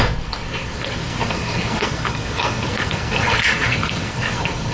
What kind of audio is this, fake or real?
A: fake